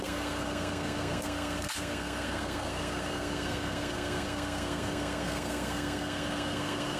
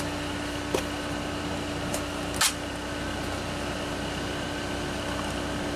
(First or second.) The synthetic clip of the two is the first